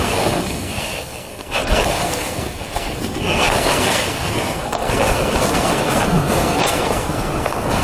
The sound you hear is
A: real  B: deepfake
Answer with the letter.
B